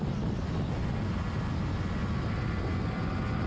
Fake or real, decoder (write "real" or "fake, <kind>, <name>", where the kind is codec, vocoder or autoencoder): real